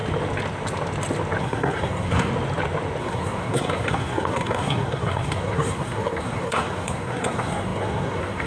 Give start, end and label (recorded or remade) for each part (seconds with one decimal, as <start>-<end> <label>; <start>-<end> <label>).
0.0-1.4 recorded; 1.4-2.3 remade; 2.3-3.0 recorded; 3.0-8.5 remade